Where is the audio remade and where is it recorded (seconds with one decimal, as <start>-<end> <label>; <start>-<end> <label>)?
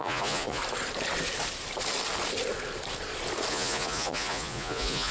0.0-0.6 remade; 0.6-3.5 recorded; 3.5-5.1 remade